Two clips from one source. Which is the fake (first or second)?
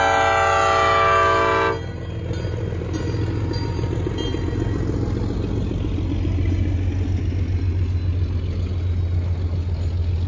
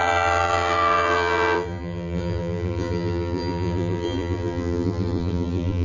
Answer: second